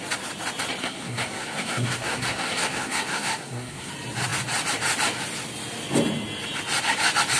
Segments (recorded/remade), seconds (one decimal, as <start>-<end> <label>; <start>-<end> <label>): 0.0-0.8 recorded; 0.8-3.9 remade; 3.9-7.4 recorded